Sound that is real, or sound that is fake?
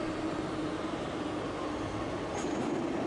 real